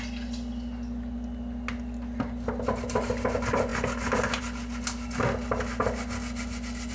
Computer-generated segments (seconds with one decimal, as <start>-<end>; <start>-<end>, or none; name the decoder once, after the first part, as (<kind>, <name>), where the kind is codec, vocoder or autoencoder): none